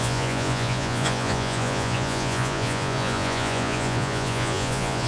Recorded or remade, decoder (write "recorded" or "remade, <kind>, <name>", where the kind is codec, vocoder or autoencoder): remade, vocoder, Vocos